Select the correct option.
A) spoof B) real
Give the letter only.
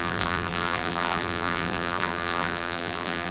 A